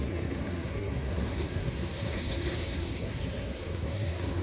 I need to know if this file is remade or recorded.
remade